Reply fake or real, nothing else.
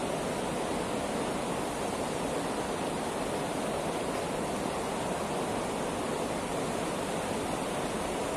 real